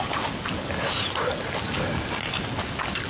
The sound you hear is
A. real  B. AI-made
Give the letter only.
A